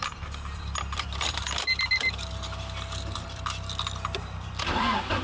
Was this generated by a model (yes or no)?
yes